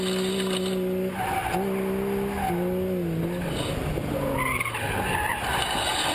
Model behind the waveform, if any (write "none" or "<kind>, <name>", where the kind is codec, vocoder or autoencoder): none